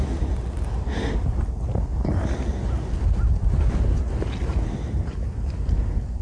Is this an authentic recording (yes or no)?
yes